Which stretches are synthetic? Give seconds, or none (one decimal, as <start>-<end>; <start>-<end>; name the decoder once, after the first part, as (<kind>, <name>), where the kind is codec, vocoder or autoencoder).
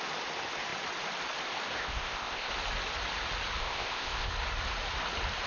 1.8-2.5 (codec, ZipCodec); 3.6-4.3